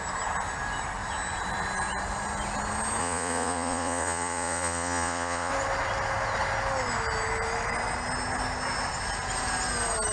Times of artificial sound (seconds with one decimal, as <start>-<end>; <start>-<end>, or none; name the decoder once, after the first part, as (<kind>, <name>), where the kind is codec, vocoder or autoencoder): 3.0-5.5 (vocoder, Vocos)